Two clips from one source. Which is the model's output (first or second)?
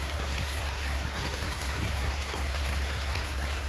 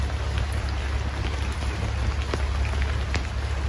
first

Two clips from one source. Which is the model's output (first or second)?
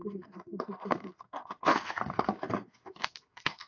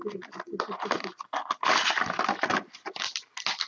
first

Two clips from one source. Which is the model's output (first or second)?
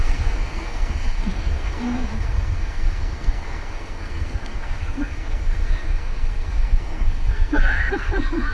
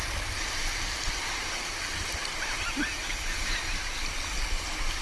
first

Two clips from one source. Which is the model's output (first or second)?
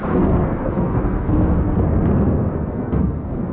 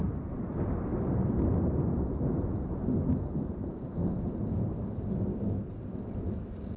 first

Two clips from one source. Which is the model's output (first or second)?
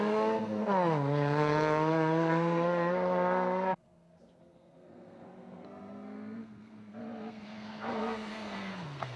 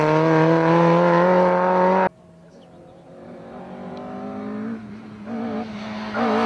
first